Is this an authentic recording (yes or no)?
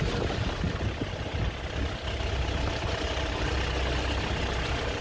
yes